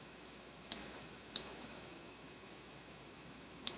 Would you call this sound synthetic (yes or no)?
yes